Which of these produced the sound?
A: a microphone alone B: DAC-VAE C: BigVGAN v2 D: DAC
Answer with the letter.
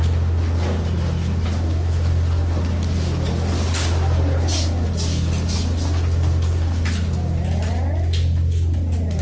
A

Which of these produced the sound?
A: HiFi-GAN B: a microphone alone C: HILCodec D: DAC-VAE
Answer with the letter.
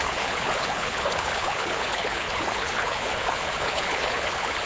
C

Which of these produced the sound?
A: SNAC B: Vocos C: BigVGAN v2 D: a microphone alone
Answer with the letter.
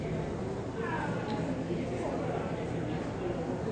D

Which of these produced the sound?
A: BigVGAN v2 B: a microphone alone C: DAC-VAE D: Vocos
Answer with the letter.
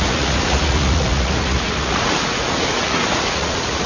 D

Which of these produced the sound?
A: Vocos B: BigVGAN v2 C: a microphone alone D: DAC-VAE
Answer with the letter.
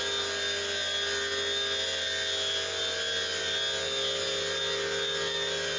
C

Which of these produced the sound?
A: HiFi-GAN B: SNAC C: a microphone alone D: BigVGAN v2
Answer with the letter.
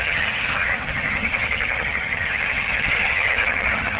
A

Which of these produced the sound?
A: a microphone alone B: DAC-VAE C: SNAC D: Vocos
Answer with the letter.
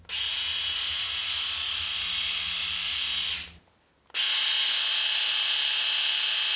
A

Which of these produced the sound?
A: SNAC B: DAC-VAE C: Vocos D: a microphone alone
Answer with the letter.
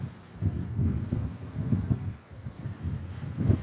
A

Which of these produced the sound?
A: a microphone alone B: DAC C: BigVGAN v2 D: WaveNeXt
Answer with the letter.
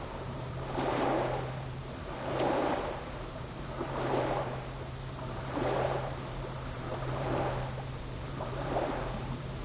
C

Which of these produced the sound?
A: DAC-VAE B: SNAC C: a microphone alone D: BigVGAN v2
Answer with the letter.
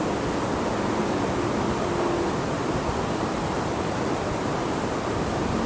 C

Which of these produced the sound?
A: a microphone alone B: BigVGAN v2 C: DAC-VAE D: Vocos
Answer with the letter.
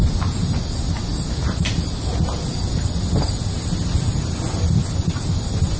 A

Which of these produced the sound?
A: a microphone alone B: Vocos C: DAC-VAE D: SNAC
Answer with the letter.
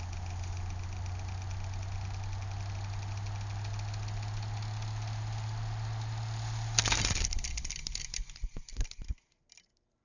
A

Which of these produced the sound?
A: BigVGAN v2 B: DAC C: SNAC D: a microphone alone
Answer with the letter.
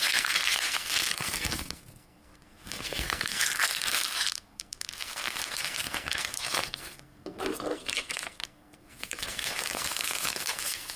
C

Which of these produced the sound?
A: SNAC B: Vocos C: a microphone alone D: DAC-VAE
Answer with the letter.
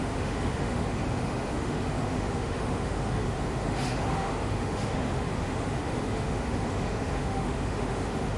D